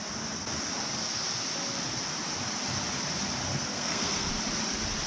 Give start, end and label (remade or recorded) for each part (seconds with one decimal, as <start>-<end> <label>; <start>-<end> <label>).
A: 0.0-3.5 recorded; 3.5-4.3 remade; 4.3-5.1 recorded

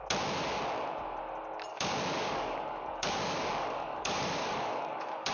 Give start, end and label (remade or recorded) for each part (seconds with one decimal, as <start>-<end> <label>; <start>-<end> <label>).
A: 0.0-1.7 recorded; 1.7-5.3 remade